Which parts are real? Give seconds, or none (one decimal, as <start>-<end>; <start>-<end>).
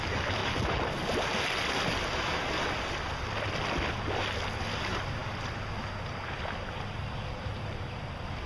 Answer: 0.0-8.5